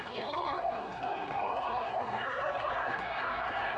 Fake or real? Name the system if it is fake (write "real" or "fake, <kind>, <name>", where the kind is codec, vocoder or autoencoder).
fake, codec, SNAC